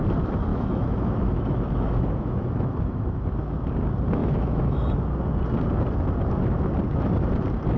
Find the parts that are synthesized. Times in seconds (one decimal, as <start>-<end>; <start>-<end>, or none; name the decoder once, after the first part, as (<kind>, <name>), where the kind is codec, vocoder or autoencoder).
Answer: 0.5-3.3 (autoencoder, DAC-VAE); 4.2-4.9